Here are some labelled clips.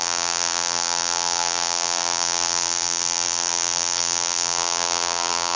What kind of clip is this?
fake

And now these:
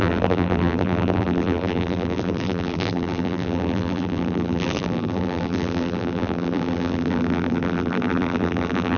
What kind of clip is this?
fake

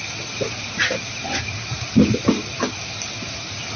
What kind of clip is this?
real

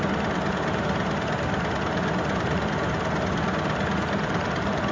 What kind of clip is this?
fake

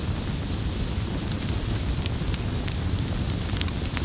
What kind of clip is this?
fake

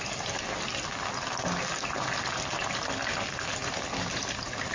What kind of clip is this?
real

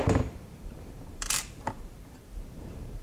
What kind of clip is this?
fake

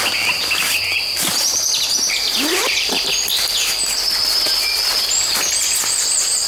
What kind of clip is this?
fake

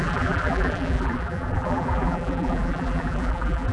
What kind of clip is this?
fake